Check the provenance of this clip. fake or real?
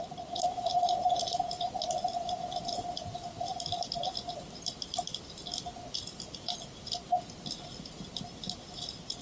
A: real